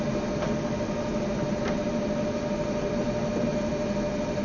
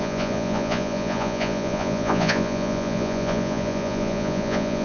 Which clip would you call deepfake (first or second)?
second